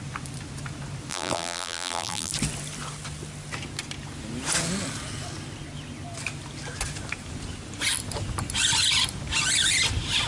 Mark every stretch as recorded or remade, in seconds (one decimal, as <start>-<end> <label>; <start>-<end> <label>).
0.0-1.1 recorded; 1.1-2.3 remade; 2.3-10.3 recorded